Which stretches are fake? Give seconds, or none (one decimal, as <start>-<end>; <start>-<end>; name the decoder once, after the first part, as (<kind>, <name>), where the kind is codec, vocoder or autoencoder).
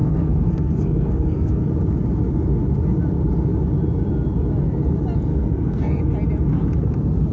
0.0-1.7 (codec, SNAC); 5.3-6.0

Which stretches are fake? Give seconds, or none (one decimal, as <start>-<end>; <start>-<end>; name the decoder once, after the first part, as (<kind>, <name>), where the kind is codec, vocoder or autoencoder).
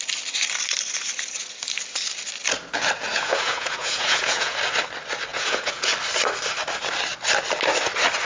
3.1-4.6 (vocoder, Vocos); 5.3-5.9